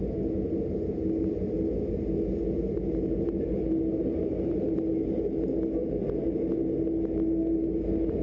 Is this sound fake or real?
real